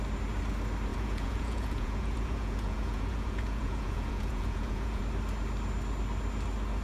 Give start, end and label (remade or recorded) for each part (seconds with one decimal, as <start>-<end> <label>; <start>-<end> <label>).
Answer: 0.0-0.9 recorded; 0.9-5.0 remade; 5.0-6.8 recorded